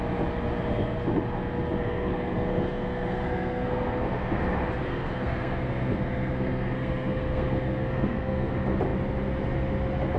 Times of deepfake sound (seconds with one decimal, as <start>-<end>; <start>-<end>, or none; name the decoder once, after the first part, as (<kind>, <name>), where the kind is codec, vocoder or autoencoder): 1.8-4.4 (codec, SNAC); 4.9-8.5